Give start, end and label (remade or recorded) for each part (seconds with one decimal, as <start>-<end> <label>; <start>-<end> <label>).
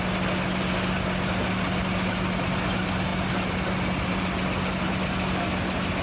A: 0.0-6.0 recorded